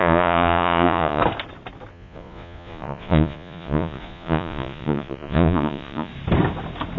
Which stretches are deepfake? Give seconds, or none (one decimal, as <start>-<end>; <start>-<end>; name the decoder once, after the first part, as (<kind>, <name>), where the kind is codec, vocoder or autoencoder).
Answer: 0.0-1.2 (vocoder, Vocos); 1.9-6.1